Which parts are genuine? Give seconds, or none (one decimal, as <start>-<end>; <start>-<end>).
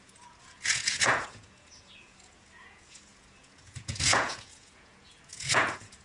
none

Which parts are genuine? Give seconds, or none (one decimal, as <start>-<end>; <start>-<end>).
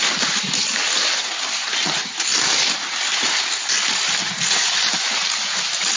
0.0-6.0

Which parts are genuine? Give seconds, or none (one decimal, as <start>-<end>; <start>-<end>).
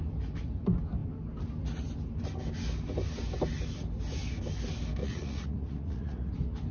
0.0-5.0; 6.3-6.7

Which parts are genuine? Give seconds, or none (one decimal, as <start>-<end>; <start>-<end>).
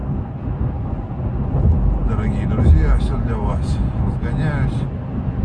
0.0-3.1; 4.2-5.4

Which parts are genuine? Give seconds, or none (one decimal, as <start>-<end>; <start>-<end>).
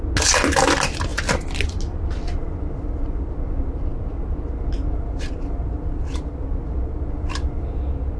0.0-8.2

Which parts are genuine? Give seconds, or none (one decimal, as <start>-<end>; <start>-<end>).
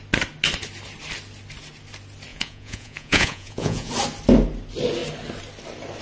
0.0-2.3; 3.9-6.0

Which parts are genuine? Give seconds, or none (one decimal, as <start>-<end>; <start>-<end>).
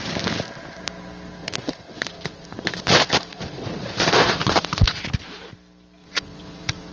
0.0-1.4; 5.0-6.0